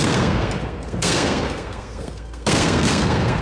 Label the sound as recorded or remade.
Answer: remade